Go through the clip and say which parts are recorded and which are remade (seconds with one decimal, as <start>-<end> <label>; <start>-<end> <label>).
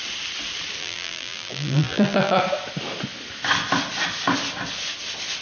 0.0-0.8 recorded; 0.8-2.4 remade; 2.4-5.4 recorded